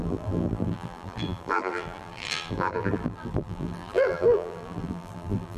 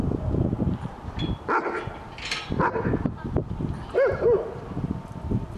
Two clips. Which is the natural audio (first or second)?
second